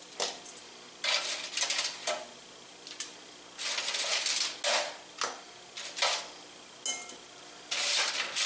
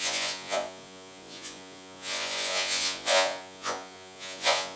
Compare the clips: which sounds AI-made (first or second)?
second